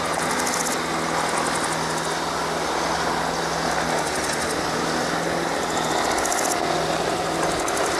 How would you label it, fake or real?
real